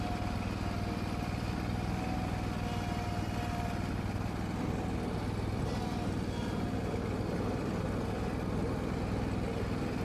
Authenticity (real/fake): real